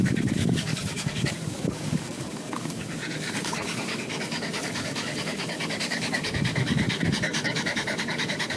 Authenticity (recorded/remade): remade